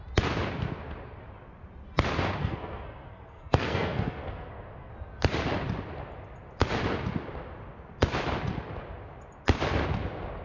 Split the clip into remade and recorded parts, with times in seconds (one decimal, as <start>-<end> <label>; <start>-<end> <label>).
0.0-2.4 recorded; 2.4-4.9 remade; 4.9-10.4 recorded